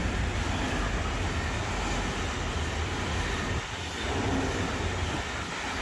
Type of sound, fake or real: real